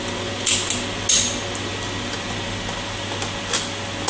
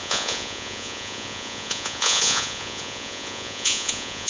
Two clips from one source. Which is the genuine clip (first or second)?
first